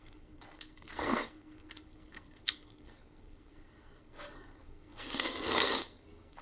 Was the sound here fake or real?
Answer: fake